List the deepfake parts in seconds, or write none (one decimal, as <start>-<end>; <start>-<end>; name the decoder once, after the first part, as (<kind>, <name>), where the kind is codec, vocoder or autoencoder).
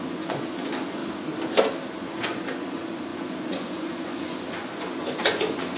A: 0.0-1.0 (vocoder, Vocos); 1.9-5.8